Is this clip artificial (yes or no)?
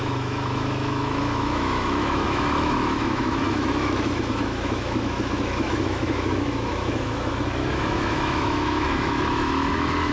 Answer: yes